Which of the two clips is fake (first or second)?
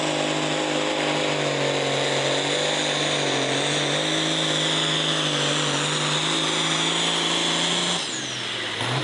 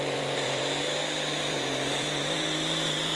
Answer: second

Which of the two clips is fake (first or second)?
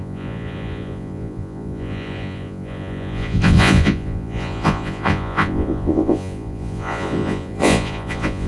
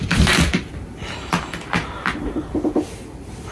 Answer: first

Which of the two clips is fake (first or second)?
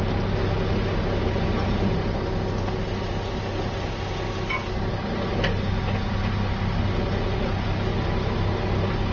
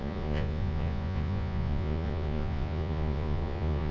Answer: second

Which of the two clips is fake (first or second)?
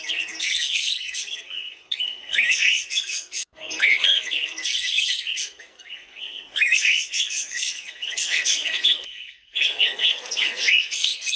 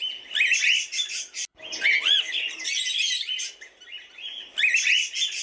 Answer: first